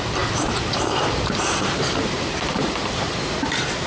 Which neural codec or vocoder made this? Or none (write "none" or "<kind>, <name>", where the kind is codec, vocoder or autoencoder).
vocoder, BigVGAN v2